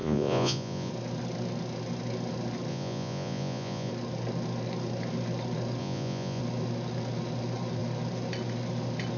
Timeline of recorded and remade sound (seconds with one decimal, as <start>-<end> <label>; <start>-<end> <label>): 0.0-0.9 remade; 0.9-2.7 recorded; 2.7-3.9 remade; 3.9-5.8 recorded; 5.8-6.4 remade; 6.4-9.2 recorded